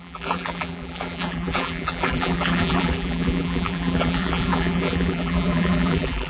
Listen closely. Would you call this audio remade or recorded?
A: remade